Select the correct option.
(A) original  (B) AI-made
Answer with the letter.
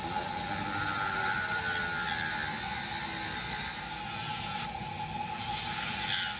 A